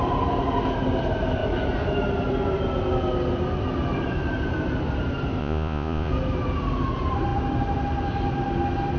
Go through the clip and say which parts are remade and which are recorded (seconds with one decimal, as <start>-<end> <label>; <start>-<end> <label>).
0.0-5.4 recorded; 5.4-6.1 remade; 6.1-9.0 recorded